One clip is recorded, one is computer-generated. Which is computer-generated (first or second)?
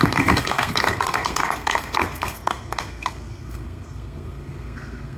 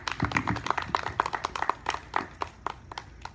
first